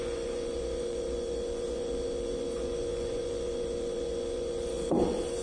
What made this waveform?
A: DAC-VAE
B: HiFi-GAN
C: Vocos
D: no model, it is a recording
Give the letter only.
C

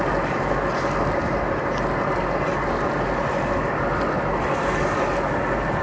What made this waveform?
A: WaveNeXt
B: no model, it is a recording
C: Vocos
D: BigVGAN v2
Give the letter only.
B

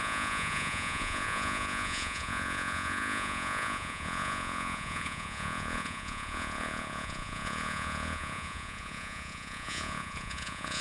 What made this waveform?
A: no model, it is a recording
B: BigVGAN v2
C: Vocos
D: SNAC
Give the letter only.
C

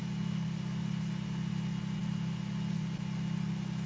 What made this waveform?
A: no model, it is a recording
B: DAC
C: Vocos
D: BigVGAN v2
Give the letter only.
A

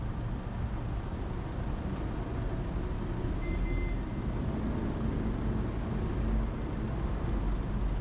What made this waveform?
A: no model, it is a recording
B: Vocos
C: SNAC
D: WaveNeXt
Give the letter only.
A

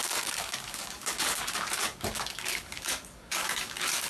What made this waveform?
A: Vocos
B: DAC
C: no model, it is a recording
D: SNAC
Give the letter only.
B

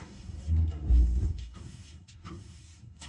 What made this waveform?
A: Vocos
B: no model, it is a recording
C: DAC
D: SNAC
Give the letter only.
D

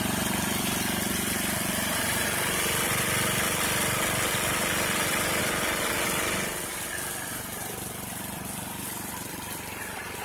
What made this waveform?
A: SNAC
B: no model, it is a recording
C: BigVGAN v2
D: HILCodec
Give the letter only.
C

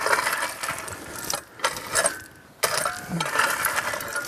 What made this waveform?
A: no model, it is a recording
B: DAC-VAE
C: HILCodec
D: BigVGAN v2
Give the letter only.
A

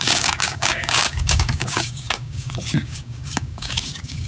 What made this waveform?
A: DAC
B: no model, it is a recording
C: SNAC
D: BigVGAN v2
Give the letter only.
A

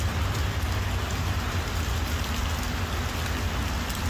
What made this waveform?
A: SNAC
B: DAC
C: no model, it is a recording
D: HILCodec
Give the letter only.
C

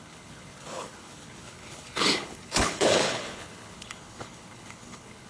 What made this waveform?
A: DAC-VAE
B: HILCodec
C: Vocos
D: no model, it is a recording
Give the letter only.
B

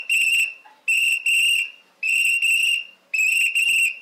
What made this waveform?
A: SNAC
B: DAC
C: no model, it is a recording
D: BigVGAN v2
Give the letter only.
C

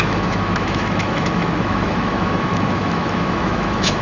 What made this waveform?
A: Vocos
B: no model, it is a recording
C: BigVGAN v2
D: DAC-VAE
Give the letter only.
D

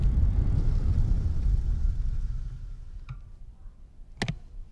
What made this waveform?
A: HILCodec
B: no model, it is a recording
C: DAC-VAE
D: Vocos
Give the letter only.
B